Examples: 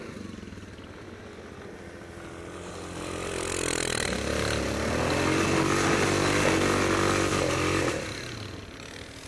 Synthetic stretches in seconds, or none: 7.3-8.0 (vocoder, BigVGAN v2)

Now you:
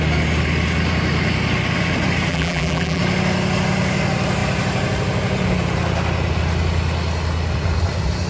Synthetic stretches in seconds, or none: 2.3-3.0 (vocoder, BigVGAN v2)

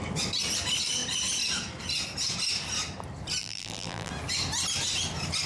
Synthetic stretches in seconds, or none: 3.4-4.1 (vocoder, BigVGAN v2)

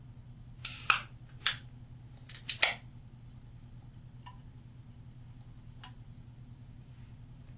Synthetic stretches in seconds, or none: 0.6-1.8 (vocoder, BigVGAN v2)

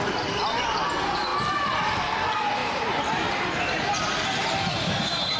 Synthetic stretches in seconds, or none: 2.6-5.4 (vocoder, BigVGAN v2)

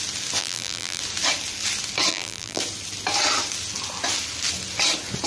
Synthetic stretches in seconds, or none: 0.4-1.0 (vocoder, BigVGAN v2); 2.1-2.6